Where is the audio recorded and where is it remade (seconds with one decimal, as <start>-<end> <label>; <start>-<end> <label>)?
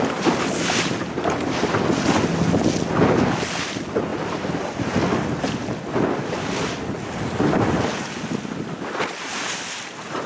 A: 0.0-10.3 recorded